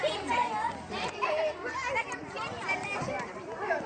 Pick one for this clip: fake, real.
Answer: fake